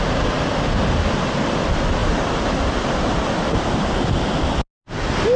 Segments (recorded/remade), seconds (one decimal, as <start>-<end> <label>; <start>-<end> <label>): 0.0-5.4 recorded